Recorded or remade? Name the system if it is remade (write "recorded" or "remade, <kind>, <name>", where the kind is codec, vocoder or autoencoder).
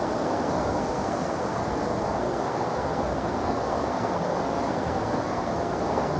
remade, codec, SNAC